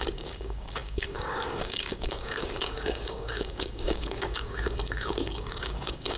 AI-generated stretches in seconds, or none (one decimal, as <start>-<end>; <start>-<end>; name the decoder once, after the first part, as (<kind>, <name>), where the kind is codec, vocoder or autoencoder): 0.0-6.2 (codec, DAC)